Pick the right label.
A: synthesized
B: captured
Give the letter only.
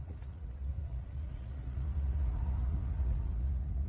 A